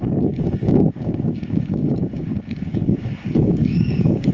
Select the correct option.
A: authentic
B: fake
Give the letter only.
B